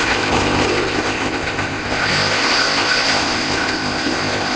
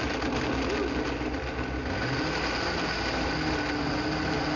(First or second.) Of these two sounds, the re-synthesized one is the first